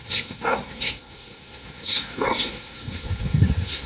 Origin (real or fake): fake